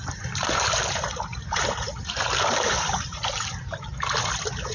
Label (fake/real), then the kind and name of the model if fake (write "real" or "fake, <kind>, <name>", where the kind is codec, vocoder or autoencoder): fake, vocoder, BigVGAN v2